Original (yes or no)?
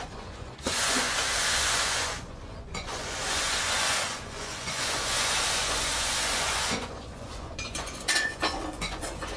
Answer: no